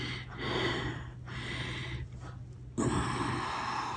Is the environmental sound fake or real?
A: real